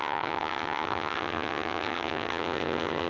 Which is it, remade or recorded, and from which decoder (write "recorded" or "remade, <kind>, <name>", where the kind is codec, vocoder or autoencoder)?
remade, vocoder, HiFi-GAN